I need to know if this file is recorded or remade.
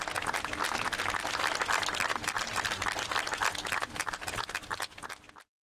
recorded